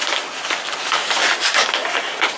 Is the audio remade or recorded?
recorded